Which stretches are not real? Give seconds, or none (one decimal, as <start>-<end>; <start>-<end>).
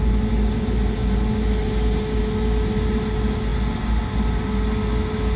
none